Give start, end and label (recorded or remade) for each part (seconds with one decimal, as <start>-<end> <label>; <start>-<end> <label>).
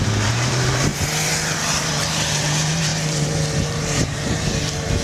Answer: 0.0-0.9 remade; 0.9-1.7 recorded; 1.7-5.0 remade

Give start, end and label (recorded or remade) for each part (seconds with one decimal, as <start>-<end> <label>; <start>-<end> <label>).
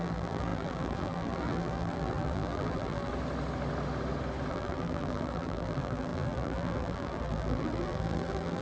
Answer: 0.0-3.1 remade; 3.1-4.5 recorded; 4.5-8.6 remade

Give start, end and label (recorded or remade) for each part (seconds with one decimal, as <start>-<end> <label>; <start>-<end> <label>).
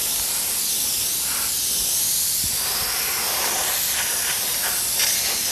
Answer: 0.0-5.5 recorded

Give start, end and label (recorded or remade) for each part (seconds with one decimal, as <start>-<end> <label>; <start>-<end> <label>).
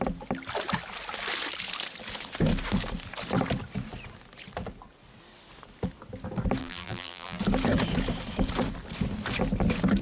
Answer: 0.0-6.6 recorded; 6.6-7.4 remade; 7.4-10.0 recorded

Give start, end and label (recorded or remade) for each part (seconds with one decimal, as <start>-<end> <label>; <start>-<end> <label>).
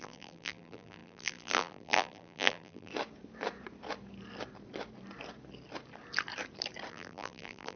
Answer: 0.0-2.9 remade; 2.9-6.9 recorded; 6.9-7.8 remade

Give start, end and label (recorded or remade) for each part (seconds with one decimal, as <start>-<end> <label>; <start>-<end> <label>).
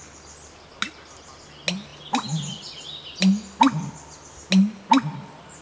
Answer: 0.0-5.6 recorded